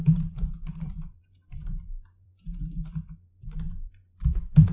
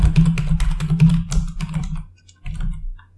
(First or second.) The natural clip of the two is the second